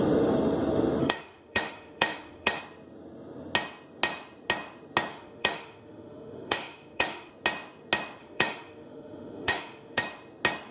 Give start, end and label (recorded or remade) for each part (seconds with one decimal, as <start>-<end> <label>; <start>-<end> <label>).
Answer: 0.0-1.0 recorded; 1.0-2.6 remade; 2.6-5.1 recorded; 5.1-7.3 remade; 7.3-8.2 recorded; 8.2-10.0 remade; 10.0-10.7 recorded